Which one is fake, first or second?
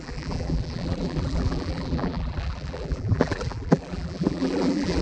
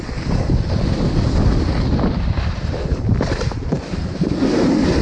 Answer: first